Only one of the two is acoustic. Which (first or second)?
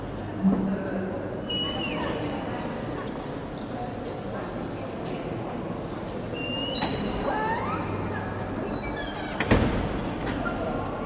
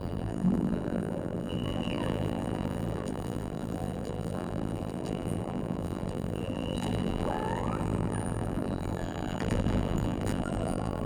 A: first